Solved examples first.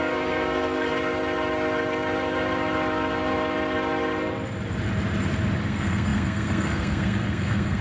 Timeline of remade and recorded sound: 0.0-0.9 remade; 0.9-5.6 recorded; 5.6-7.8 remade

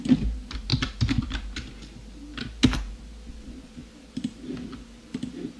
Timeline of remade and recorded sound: 0.0-5.6 recorded

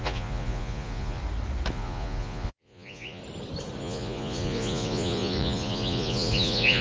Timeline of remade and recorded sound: 0.0-1.2 remade; 1.2-1.7 recorded; 1.7-3.2 remade; 3.2-3.8 recorded; 3.8-6.8 remade

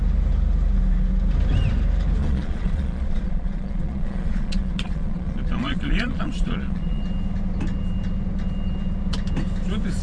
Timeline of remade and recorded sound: 0.0-2.2 recorded; 2.2-7.0 remade; 7.0-10.0 recorded

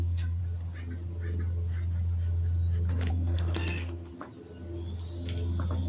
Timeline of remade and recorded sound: 0.0-0.4 remade; 0.4-3.1 recorded; 3.1-4.1 remade; 4.1-5.9 recorded

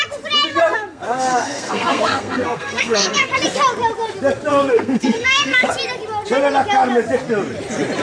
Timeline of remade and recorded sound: 0.0-0.6 recorded; 0.6-3.3 remade; 3.3-4.5 recorded; 4.5-5.7 remade; 5.7-8.0 recorded

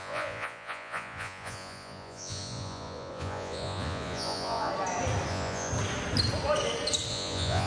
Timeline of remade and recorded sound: 0.0-4.7 remade; 4.7-5.3 recorded; 5.3-5.7 remade; 5.7-7.1 recorded; 7.1-7.7 remade

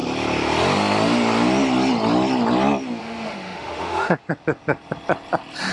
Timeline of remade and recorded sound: 0.0-3.0 recorded; 3.0-4.3 remade; 4.3-5.7 recorded